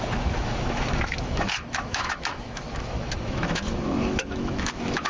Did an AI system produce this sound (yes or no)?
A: yes